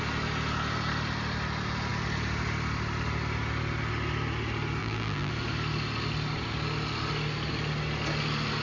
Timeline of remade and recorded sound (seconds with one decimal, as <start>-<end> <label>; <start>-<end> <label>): 0.0-4.8 recorded; 4.8-5.3 remade; 5.3-8.6 recorded